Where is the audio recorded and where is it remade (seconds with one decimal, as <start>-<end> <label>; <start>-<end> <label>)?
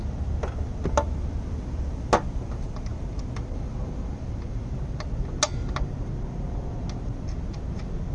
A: 0.0-8.1 recorded